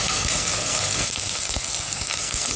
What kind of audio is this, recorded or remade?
remade